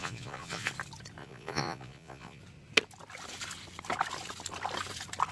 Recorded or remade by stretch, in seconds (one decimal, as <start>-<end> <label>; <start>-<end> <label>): 0.0-0.7 remade; 0.7-1.2 recorded; 1.2-2.4 remade; 2.4-5.3 recorded